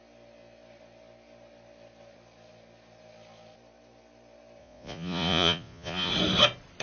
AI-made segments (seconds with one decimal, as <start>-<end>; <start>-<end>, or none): 4.6-6.1